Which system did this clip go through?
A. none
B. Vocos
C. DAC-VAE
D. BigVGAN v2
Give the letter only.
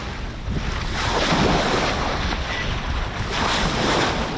A